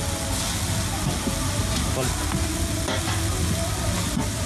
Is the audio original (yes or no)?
yes